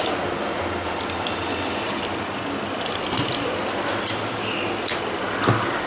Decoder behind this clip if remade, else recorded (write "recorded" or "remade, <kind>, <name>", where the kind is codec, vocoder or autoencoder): recorded